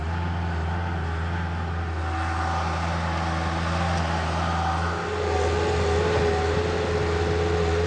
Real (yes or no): yes